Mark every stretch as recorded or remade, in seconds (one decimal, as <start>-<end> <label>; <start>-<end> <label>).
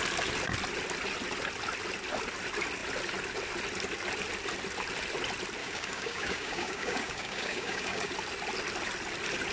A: 0.0-5.6 recorded; 5.6-8.1 remade; 8.1-9.5 recorded